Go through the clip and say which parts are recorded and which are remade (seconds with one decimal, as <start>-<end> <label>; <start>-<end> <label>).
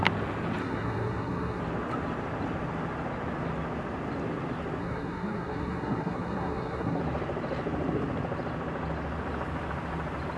0.0-0.6 recorded; 0.6-1.6 remade; 1.6-4.8 recorded; 4.8-7.0 remade; 7.0-10.4 recorded